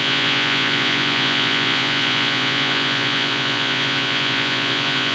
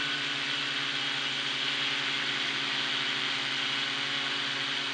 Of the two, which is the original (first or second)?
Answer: second